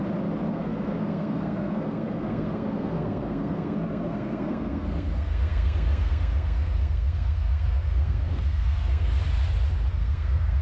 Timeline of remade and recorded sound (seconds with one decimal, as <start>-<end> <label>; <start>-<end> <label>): 0.0-0.5 recorded; 0.5-9.2 remade; 9.2-9.9 recorded; 9.9-10.6 remade